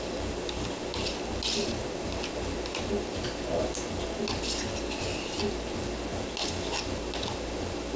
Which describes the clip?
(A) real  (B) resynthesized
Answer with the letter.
A